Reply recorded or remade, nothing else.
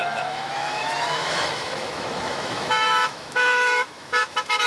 remade